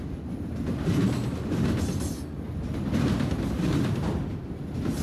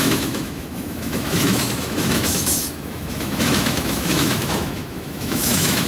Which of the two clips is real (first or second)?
first